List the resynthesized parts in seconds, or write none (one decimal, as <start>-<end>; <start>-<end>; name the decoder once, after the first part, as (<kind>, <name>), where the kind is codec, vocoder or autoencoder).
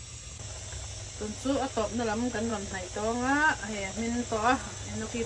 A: none